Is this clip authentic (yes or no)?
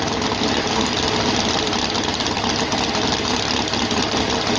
yes